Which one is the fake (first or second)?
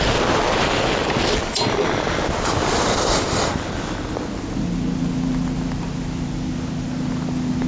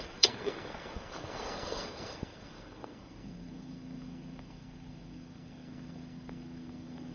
second